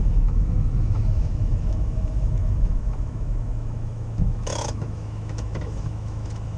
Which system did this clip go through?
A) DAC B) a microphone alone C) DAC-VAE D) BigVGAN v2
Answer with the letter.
C